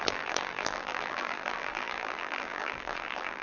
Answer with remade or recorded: remade